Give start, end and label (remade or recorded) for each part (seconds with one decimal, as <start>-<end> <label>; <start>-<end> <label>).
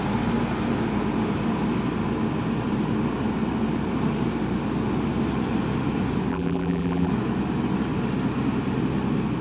0.0-6.3 recorded; 6.3-7.1 remade; 7.1-9.4 recorded